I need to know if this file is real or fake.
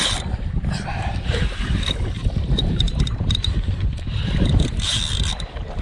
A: fake